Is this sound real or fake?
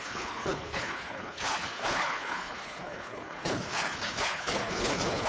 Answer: fake